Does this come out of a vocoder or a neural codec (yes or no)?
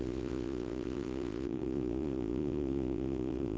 yes